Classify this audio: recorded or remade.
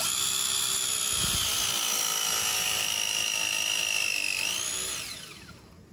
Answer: recorded